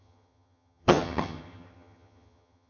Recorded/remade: remade